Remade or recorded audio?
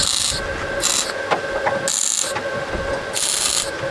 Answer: recorded